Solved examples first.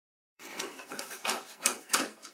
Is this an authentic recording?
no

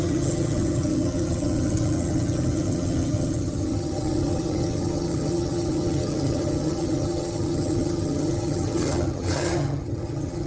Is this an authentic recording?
no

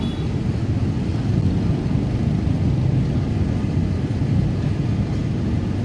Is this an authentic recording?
yes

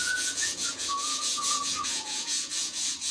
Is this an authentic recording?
no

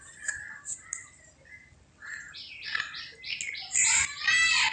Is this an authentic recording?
yes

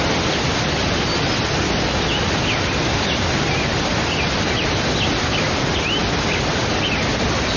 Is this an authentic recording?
yes